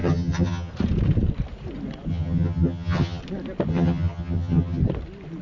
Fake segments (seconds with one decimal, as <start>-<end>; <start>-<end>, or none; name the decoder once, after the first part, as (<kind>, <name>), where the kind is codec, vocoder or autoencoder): 0.0-0.7 (vocoder, HiFi-GAN); 2.1-3.2; 3.7-4.8